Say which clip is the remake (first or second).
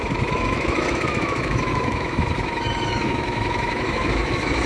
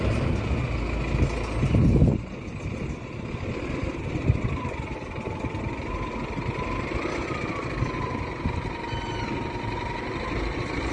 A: first